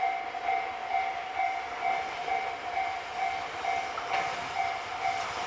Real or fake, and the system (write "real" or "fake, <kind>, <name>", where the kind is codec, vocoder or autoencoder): real